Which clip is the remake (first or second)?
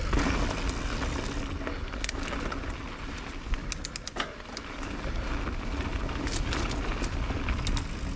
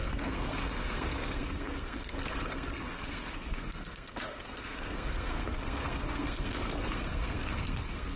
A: second